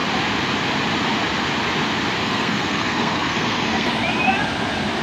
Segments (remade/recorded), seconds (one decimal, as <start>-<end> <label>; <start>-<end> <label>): 0.0-2.2 recorded; 2.2-3.9 remade; 3.9-5.0 recorded